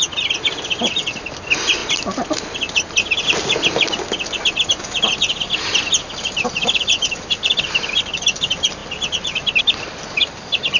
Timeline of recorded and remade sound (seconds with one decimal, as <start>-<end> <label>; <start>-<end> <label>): 0.0-10.8 recorded